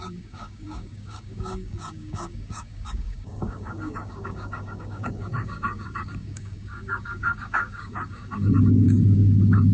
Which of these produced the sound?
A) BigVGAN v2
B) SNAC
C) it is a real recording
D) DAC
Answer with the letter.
D